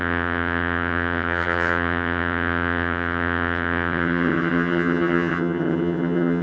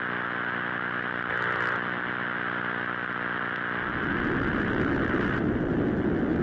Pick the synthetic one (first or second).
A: first